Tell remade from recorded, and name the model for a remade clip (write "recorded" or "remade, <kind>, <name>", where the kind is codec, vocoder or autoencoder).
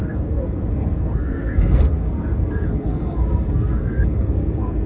remade, codec, SNAC